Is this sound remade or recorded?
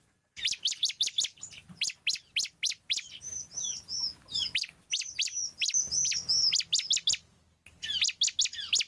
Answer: recorded